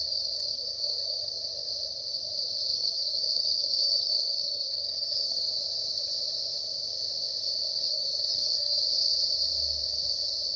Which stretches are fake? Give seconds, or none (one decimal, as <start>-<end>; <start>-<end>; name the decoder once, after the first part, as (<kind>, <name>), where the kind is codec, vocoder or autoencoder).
0.5-1.4 (codec, SNAC); 2.7-5.5; 7.9-8.8